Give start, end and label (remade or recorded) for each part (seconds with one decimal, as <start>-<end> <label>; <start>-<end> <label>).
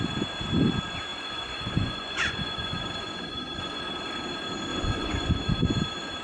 0.0-1.1 recorded; 1.1-3.8 remade; 3.8-4.7 recorded; 4.7-5.3 remade; 5.3-6.2 recorded